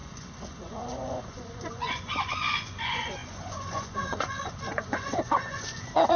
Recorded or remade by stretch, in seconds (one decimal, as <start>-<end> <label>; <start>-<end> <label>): 0.0-6.2 remade